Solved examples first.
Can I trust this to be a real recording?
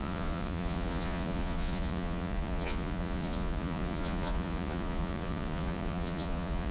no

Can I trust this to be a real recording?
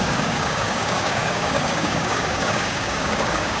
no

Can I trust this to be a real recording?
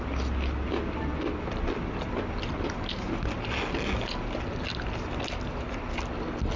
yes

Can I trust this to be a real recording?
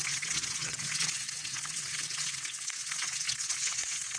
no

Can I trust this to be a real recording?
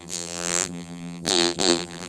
no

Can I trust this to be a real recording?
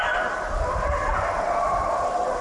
no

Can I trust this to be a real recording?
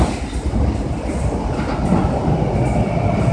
yes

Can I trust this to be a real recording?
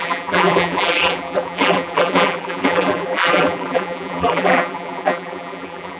no